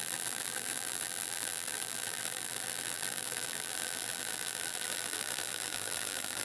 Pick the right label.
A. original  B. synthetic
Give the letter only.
B